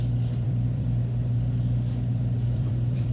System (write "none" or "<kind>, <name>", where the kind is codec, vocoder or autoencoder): vocoder, BigVGAN v2